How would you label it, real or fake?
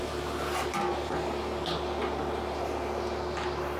real